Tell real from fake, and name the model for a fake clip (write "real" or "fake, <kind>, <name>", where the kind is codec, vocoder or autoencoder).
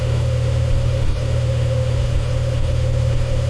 fake, autoencoder, DAC-VAE